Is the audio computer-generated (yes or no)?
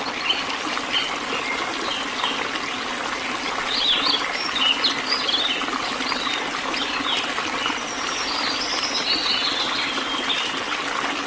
no